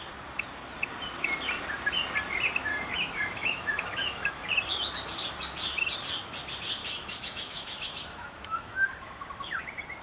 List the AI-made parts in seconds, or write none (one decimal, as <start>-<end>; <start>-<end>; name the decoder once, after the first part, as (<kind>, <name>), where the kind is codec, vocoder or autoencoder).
2.7-4.5 (autoencoder, DAC-VAE); 6.8-9.6